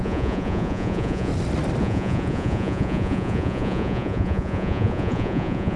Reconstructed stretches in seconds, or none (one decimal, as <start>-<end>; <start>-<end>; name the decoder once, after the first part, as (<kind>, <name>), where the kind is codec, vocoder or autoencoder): 0.0-1.3 (vocoder, Vocos); 1.8-5.8